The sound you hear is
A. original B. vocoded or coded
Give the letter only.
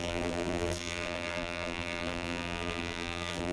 B